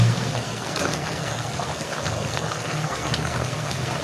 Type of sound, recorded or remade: remade